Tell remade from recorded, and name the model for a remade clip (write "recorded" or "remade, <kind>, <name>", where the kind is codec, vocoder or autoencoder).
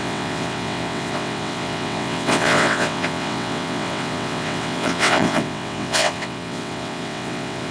remade, vocoder, WaveNeXt